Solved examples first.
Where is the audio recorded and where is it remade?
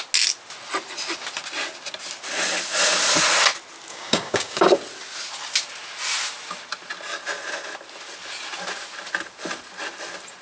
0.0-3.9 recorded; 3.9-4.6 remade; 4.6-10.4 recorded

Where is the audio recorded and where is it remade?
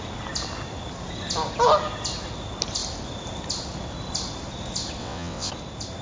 0.0-5.0 recorded; 5.0-5.5 remade; 5.5-6.0 recorded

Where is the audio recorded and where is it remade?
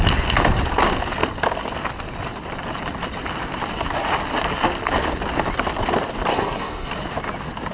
0.0-6.3 recorded; 6.3-6.9 remade; 6.9-7.7 recorded